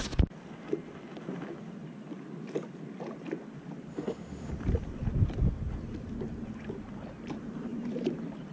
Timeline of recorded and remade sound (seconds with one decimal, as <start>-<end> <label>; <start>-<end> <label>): 0.0-3.9 recorded; 3.9-4.5 remade; 4.5-8.5 recorded